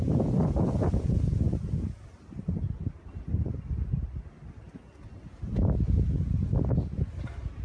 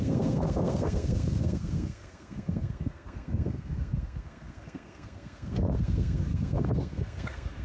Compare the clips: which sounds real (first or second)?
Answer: first